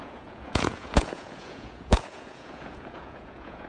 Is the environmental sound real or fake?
fake